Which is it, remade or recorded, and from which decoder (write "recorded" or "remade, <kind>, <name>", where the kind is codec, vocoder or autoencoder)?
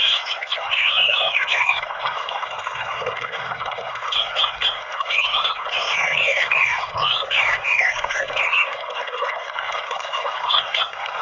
remade, codec, SNAC